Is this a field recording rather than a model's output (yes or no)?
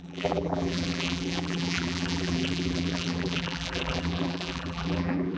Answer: no